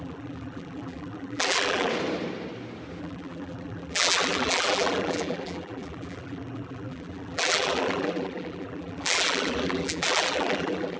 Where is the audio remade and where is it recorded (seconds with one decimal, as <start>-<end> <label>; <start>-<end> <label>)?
0.0-1.9 remade; 1.9-3.0 recorded; 3.0-11.0 remade